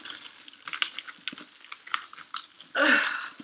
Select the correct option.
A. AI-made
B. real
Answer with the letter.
B